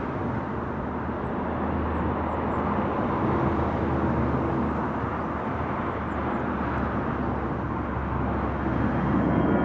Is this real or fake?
real